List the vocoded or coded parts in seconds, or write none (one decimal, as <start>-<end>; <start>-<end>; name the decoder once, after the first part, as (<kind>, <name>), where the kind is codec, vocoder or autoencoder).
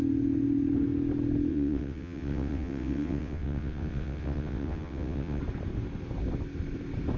1.5-5.4 (vocoder, WaveNeXt)